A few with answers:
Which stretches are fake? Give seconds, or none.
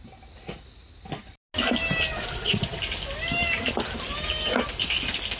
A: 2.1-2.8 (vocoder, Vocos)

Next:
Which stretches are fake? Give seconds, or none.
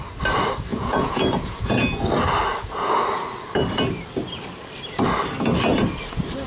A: 0.7-2.0 (vocoder, Vocos)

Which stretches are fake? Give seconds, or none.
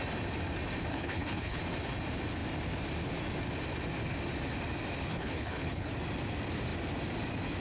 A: 0.9-1.6 (codec, HILCodec); 5.1-5.9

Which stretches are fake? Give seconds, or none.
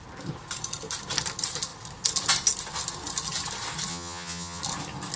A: 3.9-4.6 (vocoder, HiFi-GAN)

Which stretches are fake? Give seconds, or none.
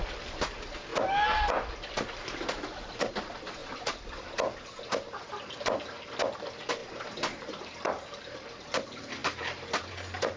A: 6.8-7.9 (vocoder, BigVGAN v2)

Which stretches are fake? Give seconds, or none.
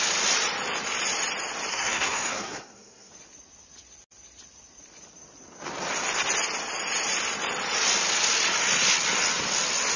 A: 1.7-3.1 (codec, SNAC)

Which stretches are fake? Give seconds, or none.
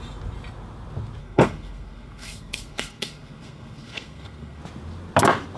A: 1.2-4.6 (codec, SNAC)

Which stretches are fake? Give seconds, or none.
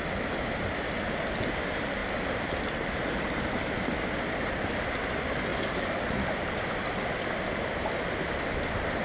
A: 5.5-6.7 (vocoder, BigVGAN v2)